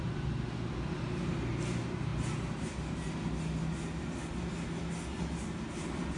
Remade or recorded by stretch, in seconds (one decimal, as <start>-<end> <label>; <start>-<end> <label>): 0.0-6.2 recorded